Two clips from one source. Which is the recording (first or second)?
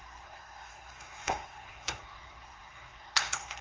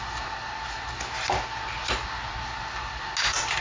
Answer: second